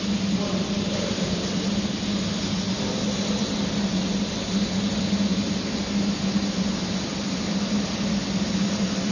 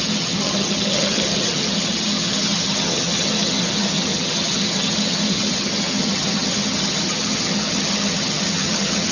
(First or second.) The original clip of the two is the first